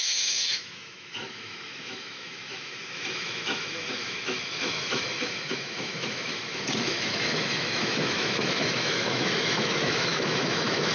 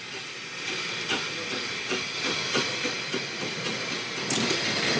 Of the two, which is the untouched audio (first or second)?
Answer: second